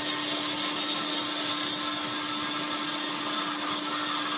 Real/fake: real